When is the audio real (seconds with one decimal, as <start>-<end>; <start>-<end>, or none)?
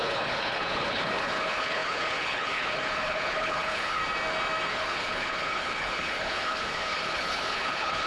4.0-4.7